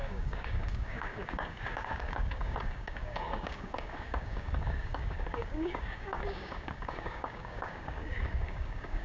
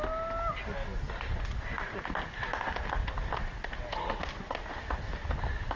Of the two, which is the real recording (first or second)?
second